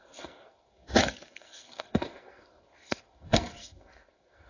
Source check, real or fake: fake